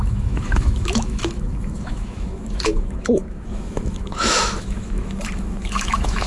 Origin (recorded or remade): remade